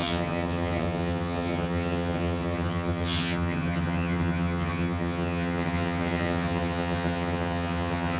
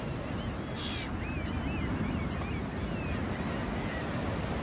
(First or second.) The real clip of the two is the second